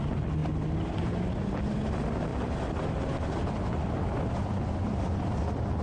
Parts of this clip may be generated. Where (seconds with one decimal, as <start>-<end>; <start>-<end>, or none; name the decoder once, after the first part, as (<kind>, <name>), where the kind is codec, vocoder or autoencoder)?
none